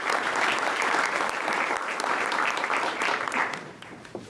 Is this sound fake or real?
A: fake